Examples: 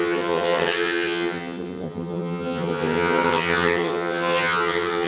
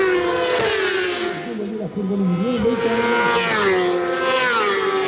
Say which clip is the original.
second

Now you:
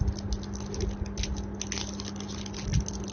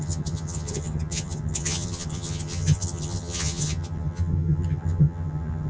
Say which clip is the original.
first